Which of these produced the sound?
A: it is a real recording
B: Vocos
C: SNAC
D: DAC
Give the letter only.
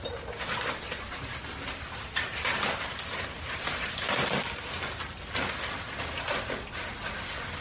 A